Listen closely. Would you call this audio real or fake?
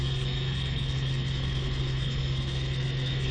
fake